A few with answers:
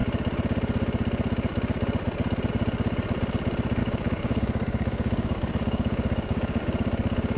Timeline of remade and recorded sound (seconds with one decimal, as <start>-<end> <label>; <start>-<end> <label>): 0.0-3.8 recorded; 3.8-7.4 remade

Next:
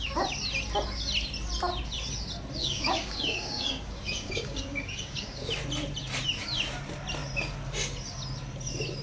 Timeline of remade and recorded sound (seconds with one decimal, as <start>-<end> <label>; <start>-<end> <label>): 0.0-2.6 recorded; 2.6-5.5 remade; 5.5-9.0 recorded

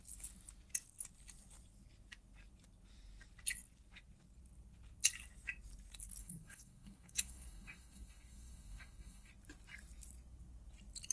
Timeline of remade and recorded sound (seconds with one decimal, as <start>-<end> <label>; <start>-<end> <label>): 0.0-6.2 recorded; 6.2-9.3 remade; 9.3-11.1 recorded

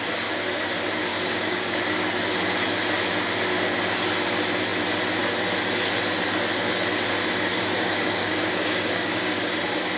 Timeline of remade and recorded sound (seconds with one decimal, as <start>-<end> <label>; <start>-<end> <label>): 0.0-1.1 recorded; 1.1-1.8 remade; 1.8-7.5 recorded; 7.5-9.4 remade; 9.4-10.0 recorded

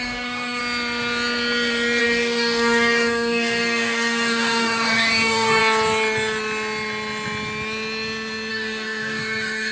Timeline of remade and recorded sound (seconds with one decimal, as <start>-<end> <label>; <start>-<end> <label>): 0.0-0.6 remade; 0.6-2.0 recorded; 2.0-5.6 remade; 5.6-8.5 recorded; 8.5-9.7 remade

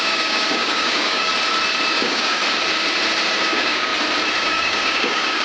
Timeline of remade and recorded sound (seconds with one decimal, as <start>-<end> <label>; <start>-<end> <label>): 0.0-1.3 remade; 1.3-1.9 recorded; 1.9-2.4 remade; 2.4-3.4 recorded; 3.4-3.9 remade; 3.9-4.4 recorded; 4.4-5.4 remade